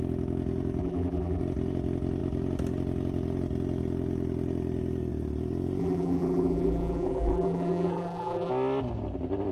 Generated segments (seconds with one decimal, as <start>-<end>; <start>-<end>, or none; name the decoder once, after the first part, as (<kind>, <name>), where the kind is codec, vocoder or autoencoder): 0.8-1.4 (vocoder, BigVGAN v2); 5.8-8.5

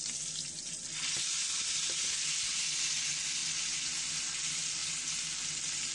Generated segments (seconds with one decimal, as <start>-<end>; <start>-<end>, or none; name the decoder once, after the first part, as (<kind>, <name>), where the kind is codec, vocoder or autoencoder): none